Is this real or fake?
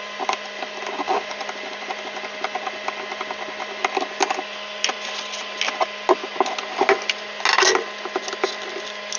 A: real